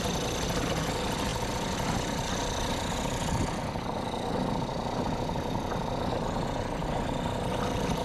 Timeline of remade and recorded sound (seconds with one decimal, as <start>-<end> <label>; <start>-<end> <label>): 0.0-8.0 recorded